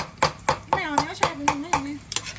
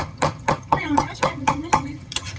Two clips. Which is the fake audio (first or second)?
second